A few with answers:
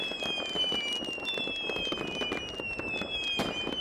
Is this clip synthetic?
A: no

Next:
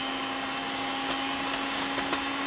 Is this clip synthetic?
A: no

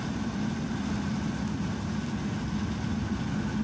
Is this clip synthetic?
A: no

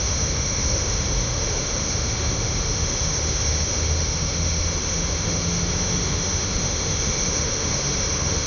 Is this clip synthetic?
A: yes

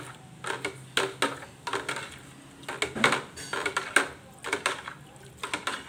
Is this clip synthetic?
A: no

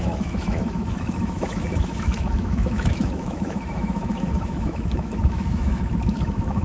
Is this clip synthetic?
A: yes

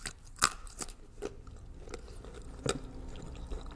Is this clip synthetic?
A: no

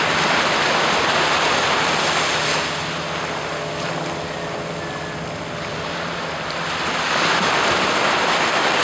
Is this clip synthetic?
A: no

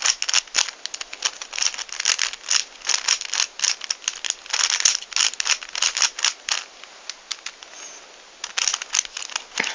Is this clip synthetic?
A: no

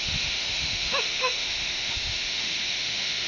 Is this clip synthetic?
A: yes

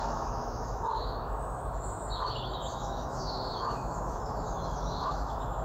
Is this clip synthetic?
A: yes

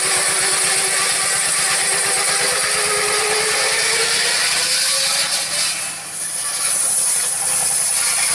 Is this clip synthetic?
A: no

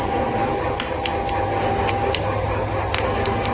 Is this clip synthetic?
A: no